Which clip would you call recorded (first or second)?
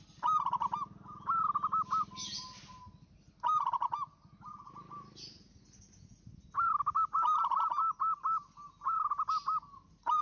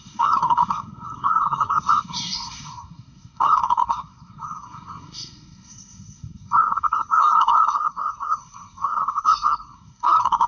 first